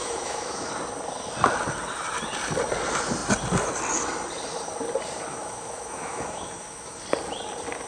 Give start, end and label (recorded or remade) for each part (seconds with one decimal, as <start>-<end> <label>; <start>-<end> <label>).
0.0-0.7 remade; 0.7-5.3 recorded; 5.3-7.0 remade; 7.0-7.9 recorded